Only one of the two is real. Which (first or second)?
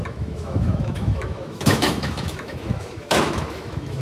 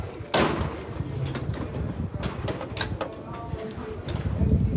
second